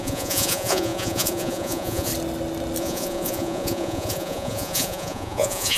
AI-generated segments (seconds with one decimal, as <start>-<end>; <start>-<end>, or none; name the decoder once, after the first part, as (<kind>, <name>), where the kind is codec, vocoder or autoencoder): 0.0-2.1 (vocoder, Vocos); 2.8-5.8